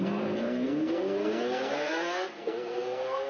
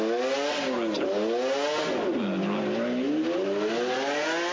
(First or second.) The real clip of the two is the second